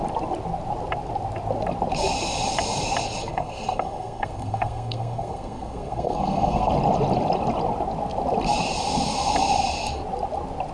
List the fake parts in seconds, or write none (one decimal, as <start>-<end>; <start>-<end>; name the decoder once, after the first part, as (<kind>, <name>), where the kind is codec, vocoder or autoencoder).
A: 3.3-6.7 (codec, SNAC)